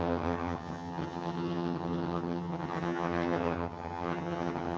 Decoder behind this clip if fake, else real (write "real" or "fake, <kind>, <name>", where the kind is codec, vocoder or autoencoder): fake, vocoder, HiFi-GAN